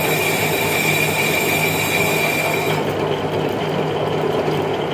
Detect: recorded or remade recorded